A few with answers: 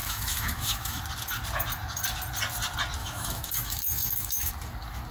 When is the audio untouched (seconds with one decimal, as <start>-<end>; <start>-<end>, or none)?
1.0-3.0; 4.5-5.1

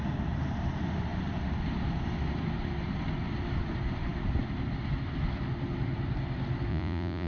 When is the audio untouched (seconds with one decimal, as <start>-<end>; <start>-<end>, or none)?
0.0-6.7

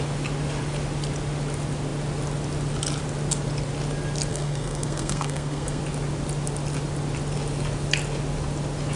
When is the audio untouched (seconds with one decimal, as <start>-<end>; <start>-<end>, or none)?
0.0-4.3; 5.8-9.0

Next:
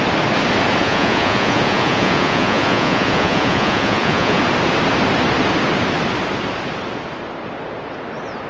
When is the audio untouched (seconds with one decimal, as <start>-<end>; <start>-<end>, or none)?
0.0-0.8; 4.4-8.5

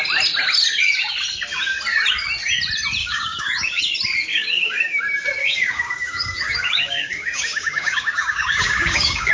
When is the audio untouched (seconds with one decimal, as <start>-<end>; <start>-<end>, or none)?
0.0-3.0; 3.8-4.3; 5.0-5.4